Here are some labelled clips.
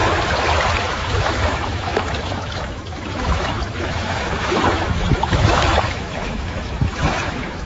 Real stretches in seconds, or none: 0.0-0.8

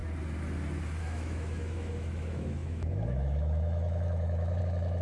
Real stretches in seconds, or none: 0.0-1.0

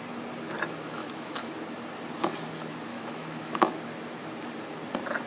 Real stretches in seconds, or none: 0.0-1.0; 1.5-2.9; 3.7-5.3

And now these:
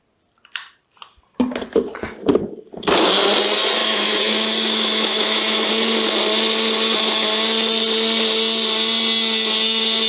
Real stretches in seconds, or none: 0.0-3.8; 5.7-10.1